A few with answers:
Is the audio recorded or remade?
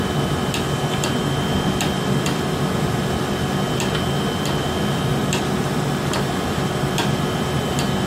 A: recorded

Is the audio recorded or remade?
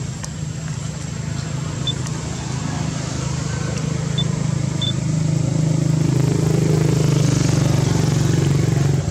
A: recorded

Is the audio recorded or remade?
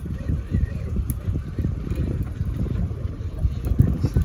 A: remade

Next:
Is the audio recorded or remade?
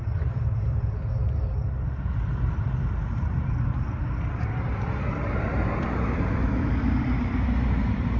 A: remade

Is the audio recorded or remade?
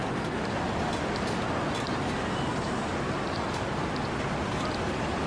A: recorded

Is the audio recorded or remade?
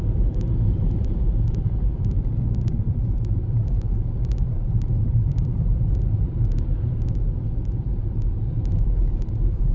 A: remade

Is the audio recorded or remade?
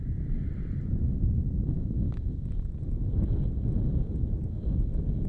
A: recorded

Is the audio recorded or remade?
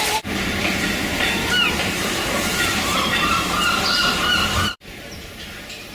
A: remade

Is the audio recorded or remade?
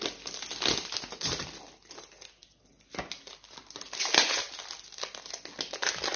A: recorded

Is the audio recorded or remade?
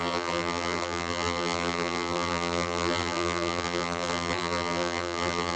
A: remade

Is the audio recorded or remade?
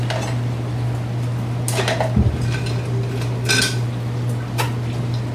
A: recorded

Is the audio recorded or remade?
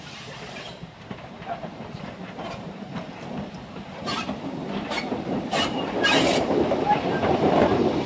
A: remade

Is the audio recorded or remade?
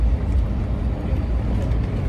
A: recorded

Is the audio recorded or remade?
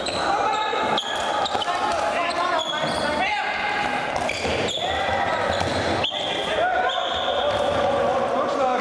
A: recorded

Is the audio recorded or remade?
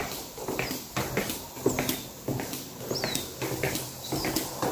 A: recorded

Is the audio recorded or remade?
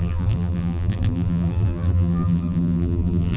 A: remade